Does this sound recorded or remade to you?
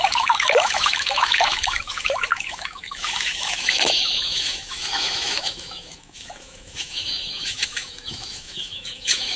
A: remade